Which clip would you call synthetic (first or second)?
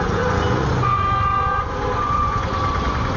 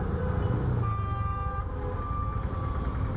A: first